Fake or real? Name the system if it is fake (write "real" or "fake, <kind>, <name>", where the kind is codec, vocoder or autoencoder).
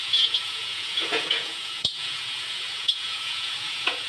fake, vocoder, Vocos